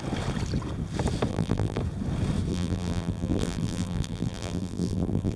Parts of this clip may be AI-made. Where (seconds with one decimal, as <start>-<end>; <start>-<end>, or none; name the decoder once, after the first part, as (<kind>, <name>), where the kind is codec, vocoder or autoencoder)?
1.3-1.8 (vocoder, BigVGAN v2); 2.5-5.4